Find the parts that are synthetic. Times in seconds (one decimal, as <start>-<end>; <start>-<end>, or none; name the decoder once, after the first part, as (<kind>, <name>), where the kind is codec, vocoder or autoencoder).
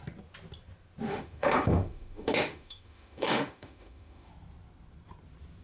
1.1-4.3 (autoencoder, DAC-VAE)